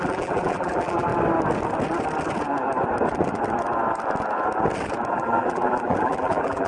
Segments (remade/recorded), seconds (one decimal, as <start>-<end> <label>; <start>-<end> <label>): 0.0-1.1 remade; 1.1-5.1 recorded; 5.1-6.7 remade